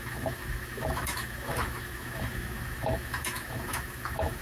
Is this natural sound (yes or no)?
no